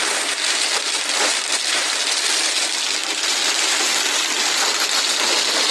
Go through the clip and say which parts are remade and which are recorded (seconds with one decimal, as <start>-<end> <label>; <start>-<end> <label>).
0.0-5.7 recorded